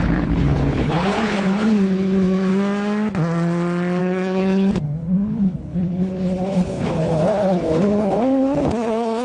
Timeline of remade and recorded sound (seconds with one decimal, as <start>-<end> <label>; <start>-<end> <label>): 0.0-2.5 remade; 2.5-4.0 recorded; 4.0-9.2 remade